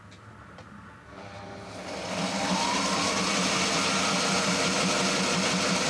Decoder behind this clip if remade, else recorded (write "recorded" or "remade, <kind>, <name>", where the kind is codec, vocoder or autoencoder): recorded